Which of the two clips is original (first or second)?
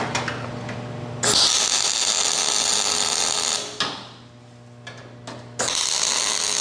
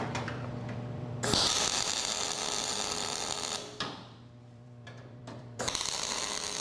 first